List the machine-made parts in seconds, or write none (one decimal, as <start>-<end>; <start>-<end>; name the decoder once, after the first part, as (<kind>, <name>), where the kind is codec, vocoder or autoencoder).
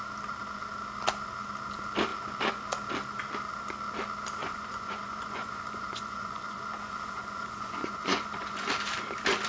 4.4-8.7 (vocoder, Vocos)